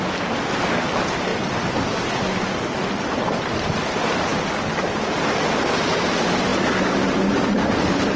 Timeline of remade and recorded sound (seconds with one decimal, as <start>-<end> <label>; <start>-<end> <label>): 0.0-1.3 recorded; 1.3-3.5 remade; 3.5-6.5 recorded; 6.5-8.2 remade